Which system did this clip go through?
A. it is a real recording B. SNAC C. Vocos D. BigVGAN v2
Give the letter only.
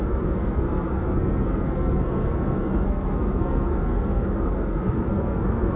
B